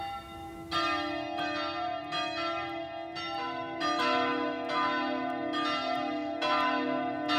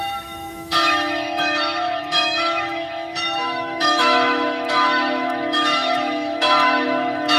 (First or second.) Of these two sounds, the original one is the first